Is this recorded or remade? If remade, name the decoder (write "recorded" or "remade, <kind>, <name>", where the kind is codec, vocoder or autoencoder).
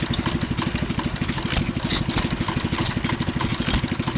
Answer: recorded